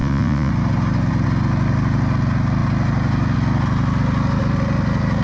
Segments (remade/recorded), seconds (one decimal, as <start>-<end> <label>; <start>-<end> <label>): 0.0-0.5 remade; 0.5-5.2 recorded